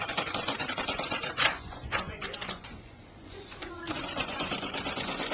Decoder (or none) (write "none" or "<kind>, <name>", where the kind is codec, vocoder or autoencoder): vocoder, Vocos